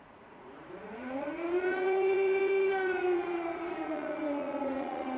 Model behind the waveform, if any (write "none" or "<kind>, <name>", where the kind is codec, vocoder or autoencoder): vocoder, Vocos